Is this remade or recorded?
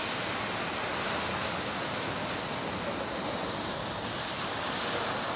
recorded